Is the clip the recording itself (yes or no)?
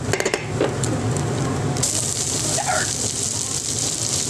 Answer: yes